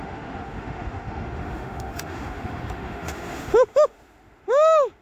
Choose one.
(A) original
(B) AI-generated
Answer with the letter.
B